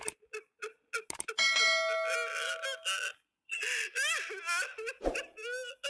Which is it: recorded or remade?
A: recorded